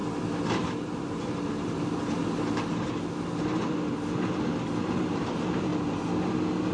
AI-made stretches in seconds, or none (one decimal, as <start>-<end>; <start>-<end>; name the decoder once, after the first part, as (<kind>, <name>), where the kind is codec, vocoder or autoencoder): 0.6-2.2 (vocoder, BigVGAN v2); 4.8-5.7